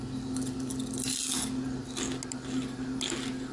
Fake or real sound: real